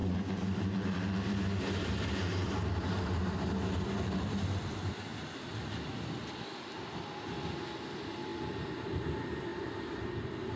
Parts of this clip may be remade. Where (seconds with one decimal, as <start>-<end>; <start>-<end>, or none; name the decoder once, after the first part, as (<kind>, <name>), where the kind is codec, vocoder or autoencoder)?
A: 0.0-1.6 (vocoder, BigVGAN v2); 2.3-5.5; 8.3-9.0; 9.5-10.6